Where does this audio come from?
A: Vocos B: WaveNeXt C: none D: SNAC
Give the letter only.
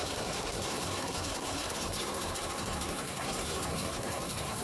D